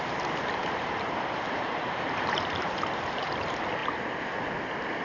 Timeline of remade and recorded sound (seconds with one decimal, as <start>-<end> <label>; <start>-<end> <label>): 0.0-0.6 recorded; 0.6-3.3 remade; 3.3-3.8 recorded; 3.8-4.4 remade; 4.4-5.0 recorded